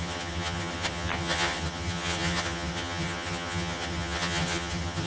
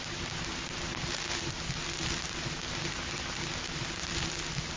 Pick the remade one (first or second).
first